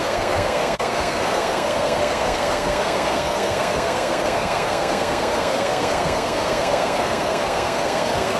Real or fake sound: fake